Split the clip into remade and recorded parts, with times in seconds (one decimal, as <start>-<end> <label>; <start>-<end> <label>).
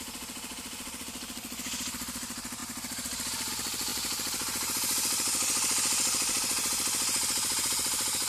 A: 0.0-2.6 recorded; 2.6-3.5 remade; 3.5-8.3 recorded